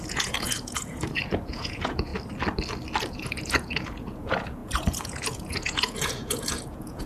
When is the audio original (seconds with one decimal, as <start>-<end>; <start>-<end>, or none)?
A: 2.1-3.0